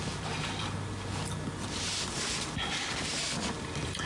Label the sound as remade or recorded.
recorded